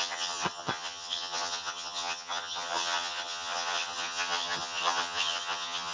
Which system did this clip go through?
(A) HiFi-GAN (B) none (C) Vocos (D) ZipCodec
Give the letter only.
A